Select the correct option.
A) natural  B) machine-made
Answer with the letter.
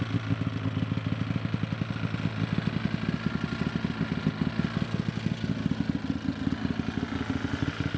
A